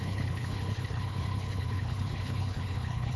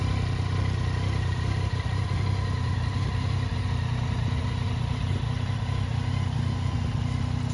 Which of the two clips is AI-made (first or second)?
first